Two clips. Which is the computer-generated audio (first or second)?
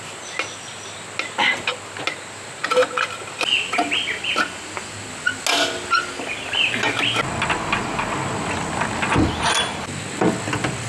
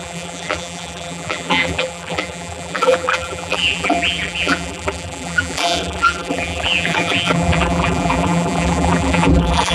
second